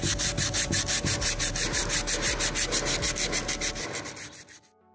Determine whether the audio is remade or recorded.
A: recorded